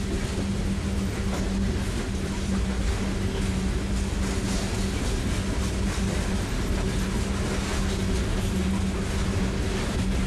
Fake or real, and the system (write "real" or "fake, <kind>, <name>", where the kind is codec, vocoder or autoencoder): real